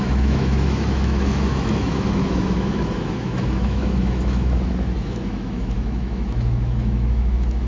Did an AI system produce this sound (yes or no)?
yes